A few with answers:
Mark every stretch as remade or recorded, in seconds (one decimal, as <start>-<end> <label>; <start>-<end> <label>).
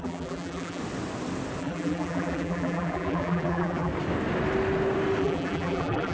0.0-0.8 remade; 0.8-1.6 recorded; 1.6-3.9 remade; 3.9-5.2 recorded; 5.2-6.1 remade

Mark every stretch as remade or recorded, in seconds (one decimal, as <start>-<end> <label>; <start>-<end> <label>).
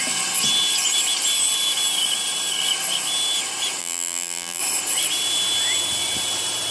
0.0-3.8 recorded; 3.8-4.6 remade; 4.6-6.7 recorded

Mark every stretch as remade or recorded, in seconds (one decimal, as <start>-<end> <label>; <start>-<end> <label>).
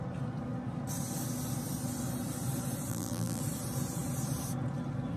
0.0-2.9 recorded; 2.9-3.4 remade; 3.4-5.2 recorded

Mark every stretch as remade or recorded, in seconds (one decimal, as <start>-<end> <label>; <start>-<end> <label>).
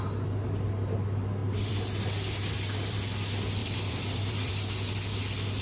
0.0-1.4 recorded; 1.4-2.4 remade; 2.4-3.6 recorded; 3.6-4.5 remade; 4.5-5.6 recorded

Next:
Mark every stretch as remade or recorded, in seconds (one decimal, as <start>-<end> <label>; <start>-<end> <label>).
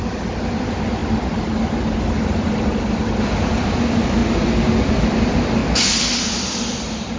0.0-1.0 remade; 1.0-2.0 recorded; 2.0-5.6 remade; 5.6-6.2 recorded; 6.2-7.2 remade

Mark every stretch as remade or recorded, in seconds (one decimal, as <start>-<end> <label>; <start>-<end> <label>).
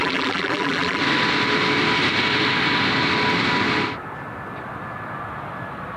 0.0-1.0 remade; 1.0-6.0 recorded